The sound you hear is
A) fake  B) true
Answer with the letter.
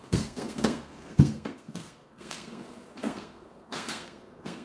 A